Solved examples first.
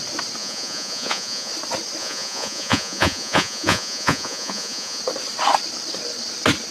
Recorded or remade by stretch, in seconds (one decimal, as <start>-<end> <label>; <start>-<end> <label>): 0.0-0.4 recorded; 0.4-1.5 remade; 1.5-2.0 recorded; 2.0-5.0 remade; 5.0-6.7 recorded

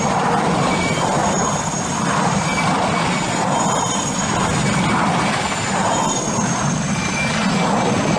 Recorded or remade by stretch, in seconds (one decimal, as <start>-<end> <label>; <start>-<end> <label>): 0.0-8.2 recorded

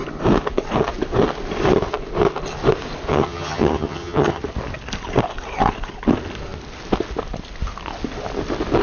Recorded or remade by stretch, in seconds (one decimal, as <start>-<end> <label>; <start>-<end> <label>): 0.0-3.1 recorded; 3.1-4.4 remade; 4.4-8.8 recorded

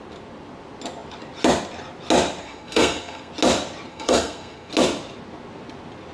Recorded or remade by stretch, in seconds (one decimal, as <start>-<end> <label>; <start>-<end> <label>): 0.0-2.4 recorded; 2.4-3.3 remade; 3.3-3.9 recorded; 3.9-4.7 remade; 4.7-6.1 recorded

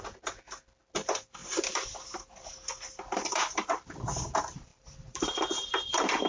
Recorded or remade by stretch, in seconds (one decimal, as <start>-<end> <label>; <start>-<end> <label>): 0.0-1.4 recorded; 1.4-2.7 remade; 2.7-4.7 recorded; 4.7-6.3 remade

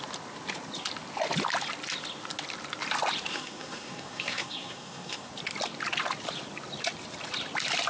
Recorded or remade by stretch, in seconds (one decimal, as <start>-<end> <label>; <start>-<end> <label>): 0.0-3.3 recorded; 3.3-5.3 remade; 5.3-7.9 recorded